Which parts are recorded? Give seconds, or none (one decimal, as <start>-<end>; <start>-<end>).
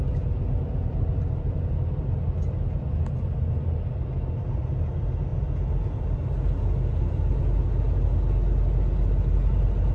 0.0-9.9